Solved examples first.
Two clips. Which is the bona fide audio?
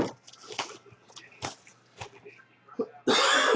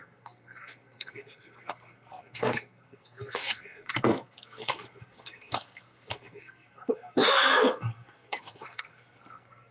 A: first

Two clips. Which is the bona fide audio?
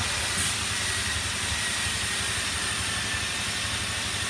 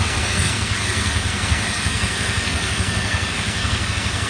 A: first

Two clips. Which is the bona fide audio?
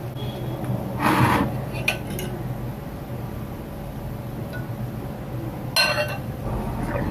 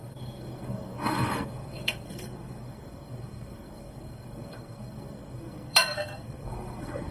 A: first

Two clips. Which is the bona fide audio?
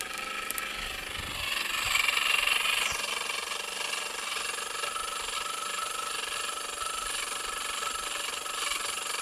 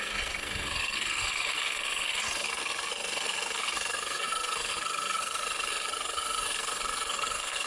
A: first